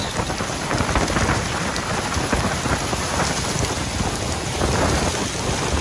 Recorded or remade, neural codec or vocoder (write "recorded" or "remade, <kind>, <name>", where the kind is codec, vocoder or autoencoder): recorded